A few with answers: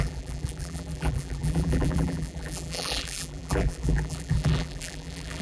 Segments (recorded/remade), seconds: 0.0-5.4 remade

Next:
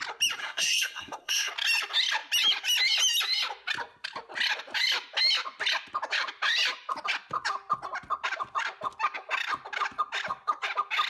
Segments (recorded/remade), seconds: 0.0-0.4 recorded; 0.4-1.5 remade; 1.5-11.1 recorded

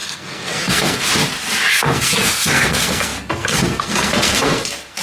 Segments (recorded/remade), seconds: 0.0-1.1 remade; 1.1-1.7 recorded; 1.7-5.0 remade

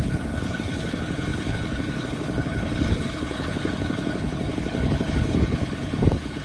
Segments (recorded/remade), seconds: 0.0-6.4 remade

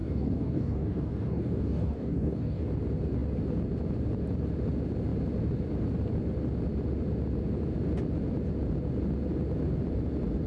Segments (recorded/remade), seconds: 0.0-2.7 remade; 2.7-10.5 recorded

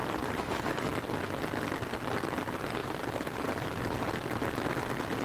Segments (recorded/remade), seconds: 0.0-0.6 remade; 0.6-2.8 recorded; 2.8-3.4 remade; 3.4-5.2 recorded

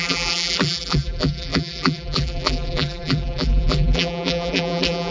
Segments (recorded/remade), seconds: 0.0-5.1 remade